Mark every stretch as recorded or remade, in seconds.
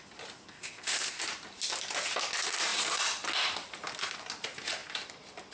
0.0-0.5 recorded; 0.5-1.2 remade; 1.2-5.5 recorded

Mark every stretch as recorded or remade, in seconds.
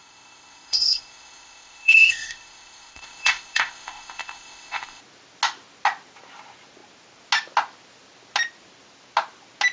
0.0-5.0 remade; 5.0-9.7 recorded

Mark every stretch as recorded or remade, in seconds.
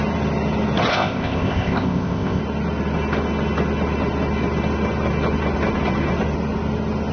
0.0-0.9 recorded; 0.9-2.4 remade; 2.4-7.1 recorded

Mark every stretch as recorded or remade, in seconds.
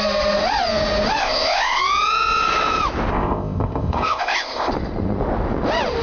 0.0-1.2 recorded; 1.2-1.8 remade; 1.8-3.1 recorded; 3.1-4.7 remade; 4.7-6.0 recorded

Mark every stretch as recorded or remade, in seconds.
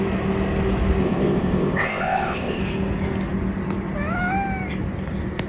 0.0-1.0 recorded; 1.0-2.6 remade; 2.6-5.5 recorded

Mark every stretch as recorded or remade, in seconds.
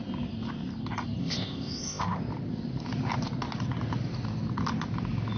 0.0-1.2 recorded; 1.2-2.2 remade; 2.2-5.4 recorded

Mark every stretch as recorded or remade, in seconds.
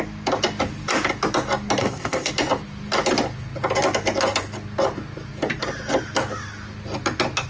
0.0-1.8 recorded; 1.8-2.3 remade; 2.3-7.5 recorded